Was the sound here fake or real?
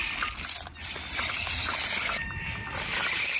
real